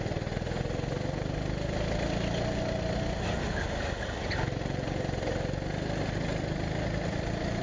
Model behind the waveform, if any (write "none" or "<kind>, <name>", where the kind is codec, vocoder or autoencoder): none